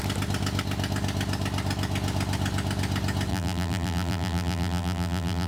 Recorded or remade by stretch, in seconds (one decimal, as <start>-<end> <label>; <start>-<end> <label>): 0.0-3.3 recorded; 3.3-5.5 remade